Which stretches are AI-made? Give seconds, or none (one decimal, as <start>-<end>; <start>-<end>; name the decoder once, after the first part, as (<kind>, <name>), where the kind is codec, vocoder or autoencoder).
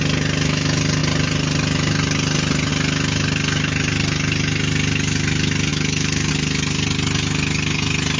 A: 5.7-6.3 (autoencoder, DAC-VAE)